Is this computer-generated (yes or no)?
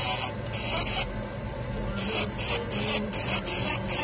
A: no